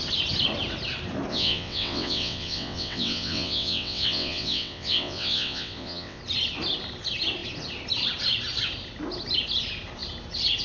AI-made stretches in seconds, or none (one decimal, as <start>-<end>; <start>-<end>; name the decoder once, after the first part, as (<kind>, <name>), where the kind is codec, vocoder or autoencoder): 1.3-6.2 (vocoder, WaveNeXt)